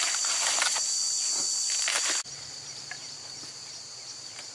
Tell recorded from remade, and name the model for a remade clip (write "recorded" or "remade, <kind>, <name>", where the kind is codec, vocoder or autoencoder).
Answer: recorded